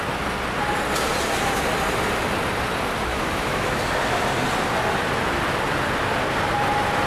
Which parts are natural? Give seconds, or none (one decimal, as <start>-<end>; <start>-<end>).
0.0-3.1; 3.8-7.1